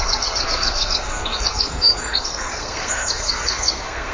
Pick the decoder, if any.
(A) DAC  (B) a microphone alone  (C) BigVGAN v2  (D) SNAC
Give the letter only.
D